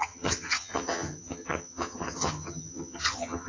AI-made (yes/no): yes